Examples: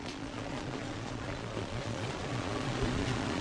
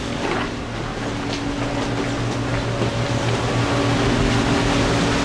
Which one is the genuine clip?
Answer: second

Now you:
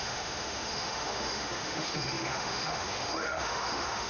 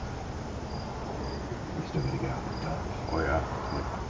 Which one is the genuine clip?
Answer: second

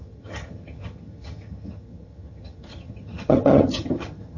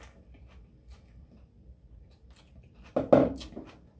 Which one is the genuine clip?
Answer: second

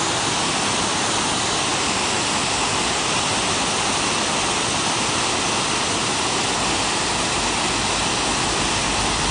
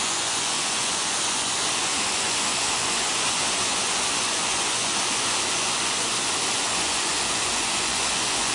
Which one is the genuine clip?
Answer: first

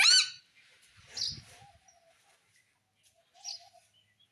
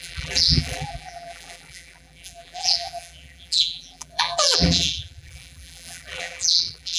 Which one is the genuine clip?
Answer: first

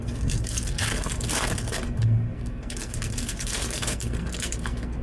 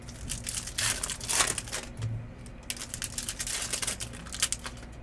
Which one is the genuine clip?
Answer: second